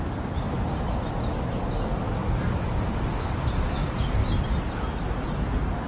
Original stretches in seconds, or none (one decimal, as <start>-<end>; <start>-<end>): 0.0-5.9